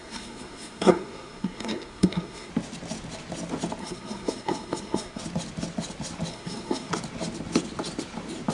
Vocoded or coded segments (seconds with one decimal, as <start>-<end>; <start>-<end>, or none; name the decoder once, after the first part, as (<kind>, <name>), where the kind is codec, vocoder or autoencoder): 0.0-2.5 (codec, SNAC); 3.8-5.2; 6.3-6.9